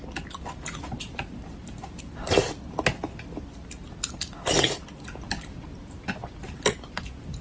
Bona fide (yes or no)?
yes